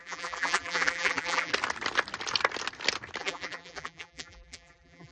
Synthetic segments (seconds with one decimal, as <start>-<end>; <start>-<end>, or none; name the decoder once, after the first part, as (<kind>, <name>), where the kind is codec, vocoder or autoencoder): 0.0-1.5 (vocoder, BigVGAN v2); 3.2-5.1